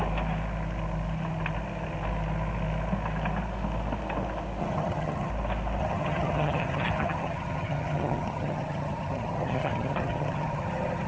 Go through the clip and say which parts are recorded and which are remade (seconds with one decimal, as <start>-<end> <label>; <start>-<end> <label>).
0.0-4.6 recorded; 4.6-5.3 remade; 5.3-5.8 recorded; 5.8-11.1 remade